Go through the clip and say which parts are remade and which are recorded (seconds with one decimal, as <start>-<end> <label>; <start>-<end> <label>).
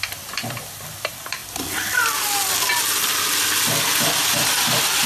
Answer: 0.0-5.1 recorded